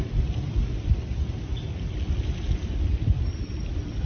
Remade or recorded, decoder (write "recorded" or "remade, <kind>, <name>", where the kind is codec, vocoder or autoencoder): recorded